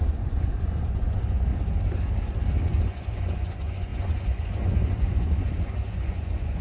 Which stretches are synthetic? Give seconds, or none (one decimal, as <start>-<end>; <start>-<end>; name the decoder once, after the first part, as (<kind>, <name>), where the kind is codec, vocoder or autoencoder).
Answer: 0.0-1.5 (vocoder, Vocos); 2.8-6.6